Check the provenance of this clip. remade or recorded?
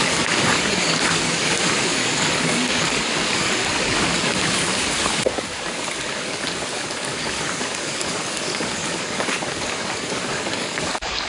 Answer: remade